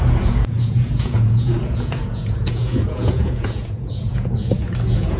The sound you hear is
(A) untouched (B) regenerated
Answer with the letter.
B